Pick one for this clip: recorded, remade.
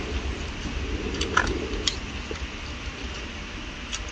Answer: recorded